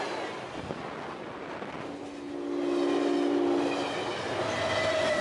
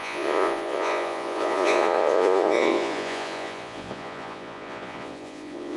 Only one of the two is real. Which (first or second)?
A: first